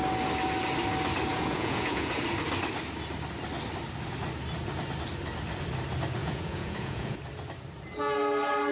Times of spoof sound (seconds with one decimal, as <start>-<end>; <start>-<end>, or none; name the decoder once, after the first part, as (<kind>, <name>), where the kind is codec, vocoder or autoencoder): 1.3-2.1 (vocoder, Vocos); 6.2-7.2